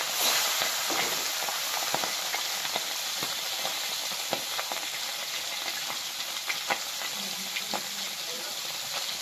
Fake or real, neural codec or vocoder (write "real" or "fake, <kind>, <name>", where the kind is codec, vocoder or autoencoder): real